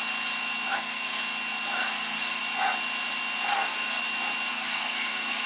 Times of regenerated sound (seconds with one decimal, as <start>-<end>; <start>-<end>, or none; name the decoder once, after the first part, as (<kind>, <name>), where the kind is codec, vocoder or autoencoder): 0.7-1.2 (codec, SNAC); 1.8-2.4; 3.5-4.0; 4.5-5.5